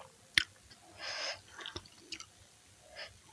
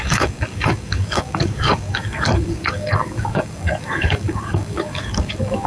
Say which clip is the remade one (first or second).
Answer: second